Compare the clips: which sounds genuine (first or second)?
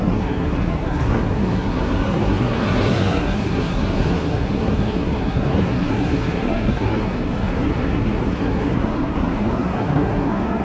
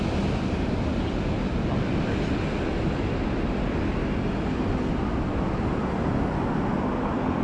second